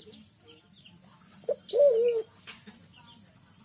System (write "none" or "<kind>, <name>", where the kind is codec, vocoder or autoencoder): none